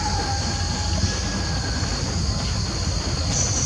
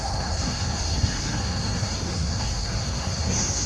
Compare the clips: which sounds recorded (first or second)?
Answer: first